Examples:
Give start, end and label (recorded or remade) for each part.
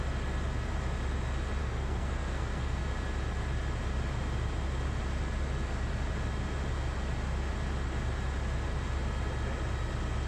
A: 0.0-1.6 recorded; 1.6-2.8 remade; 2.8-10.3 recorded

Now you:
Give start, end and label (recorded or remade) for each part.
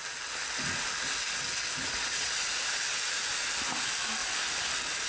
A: 0.0-5.1 recorded